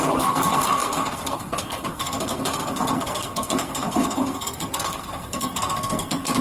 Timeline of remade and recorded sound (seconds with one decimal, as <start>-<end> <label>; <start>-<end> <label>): 0.0-6.4 remade